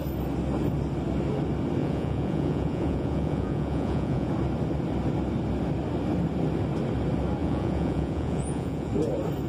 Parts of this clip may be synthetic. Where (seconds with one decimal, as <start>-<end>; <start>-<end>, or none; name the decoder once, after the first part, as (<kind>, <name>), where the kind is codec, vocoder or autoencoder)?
1.8-4.3 (vocoder, Vocos); 7.4-8.9